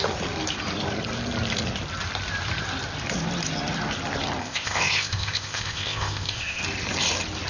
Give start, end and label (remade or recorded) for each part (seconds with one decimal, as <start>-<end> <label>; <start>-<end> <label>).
0.0-4.4 recorded; 4.4-6.6 remade; 6.6-7.5 recorded